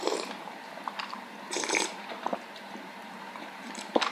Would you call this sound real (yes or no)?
no